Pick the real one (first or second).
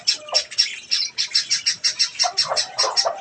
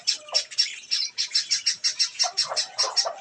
first